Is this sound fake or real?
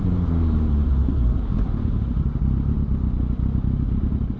fake